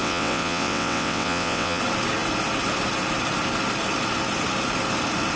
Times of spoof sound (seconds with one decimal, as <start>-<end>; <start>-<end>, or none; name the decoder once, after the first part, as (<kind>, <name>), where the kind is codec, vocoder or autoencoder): 0.0-1.8 (vocoder, WaveNeXt)